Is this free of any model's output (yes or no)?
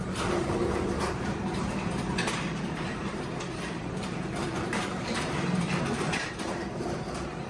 no